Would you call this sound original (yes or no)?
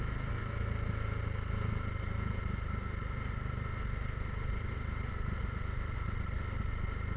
yes